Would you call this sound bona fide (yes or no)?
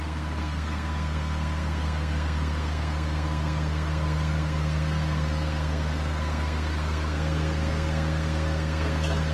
no